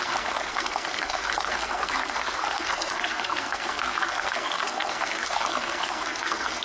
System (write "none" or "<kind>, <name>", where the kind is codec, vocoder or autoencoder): codec, SNAC